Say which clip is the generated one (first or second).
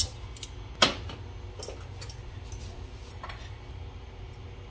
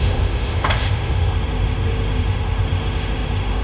second